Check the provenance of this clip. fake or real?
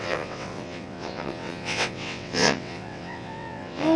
fake